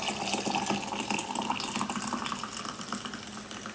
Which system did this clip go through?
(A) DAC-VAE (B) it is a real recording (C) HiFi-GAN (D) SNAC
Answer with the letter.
B